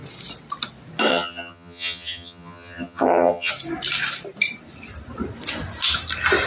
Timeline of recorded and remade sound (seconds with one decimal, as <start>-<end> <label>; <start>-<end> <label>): 0.0-1.1 recorded; 1.1-3.5 remade; 3.5-6.5 recorded